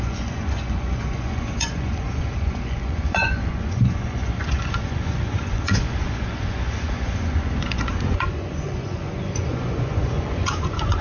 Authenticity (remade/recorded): remade